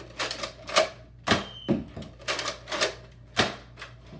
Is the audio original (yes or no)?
yes